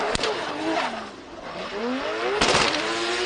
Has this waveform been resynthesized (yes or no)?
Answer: no